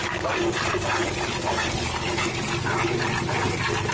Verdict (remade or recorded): recorded